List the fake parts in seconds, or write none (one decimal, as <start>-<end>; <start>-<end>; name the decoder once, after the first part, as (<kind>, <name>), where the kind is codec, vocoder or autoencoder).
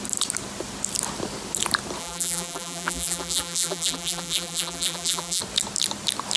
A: 2.0-5.4 (vocoder, BigVGAN v2)